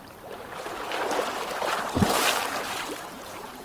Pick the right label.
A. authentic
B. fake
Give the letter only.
B